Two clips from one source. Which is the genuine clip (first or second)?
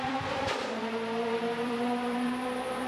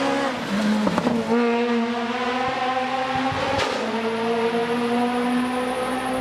second